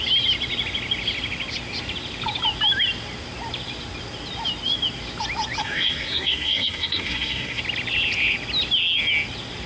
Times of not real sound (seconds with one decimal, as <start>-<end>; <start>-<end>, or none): 5.6-7.6